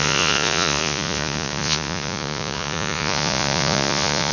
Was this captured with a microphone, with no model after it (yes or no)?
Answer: no